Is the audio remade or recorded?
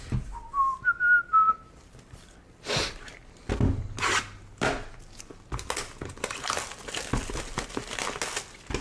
recorded